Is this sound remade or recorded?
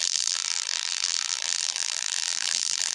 remade